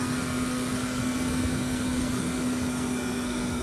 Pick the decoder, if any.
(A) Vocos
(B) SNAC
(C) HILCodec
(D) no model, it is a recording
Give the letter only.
B